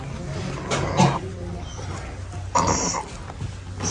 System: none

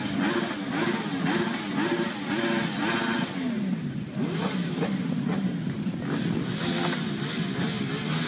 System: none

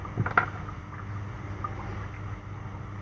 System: none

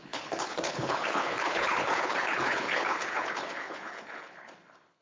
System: codec, HILCodec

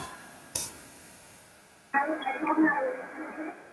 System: none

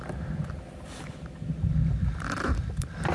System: none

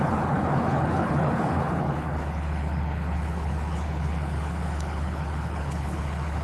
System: codec, HILCodec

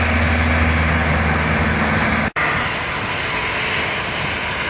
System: none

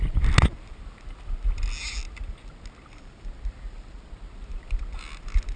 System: none